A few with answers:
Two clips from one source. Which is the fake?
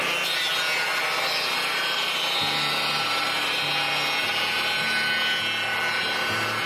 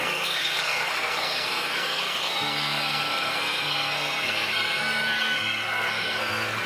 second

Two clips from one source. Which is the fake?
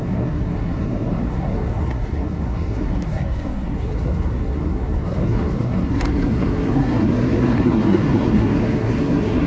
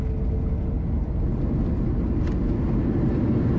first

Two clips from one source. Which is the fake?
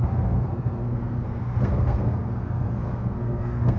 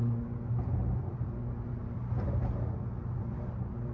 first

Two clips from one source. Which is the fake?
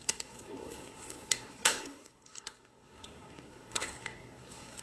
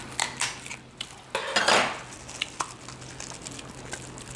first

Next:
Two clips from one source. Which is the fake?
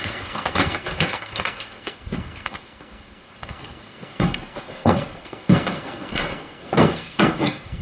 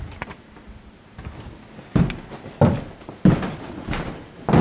first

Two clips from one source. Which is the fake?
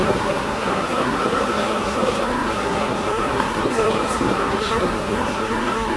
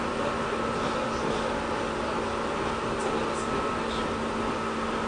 first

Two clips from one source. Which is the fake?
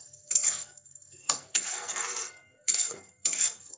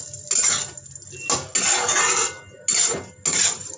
first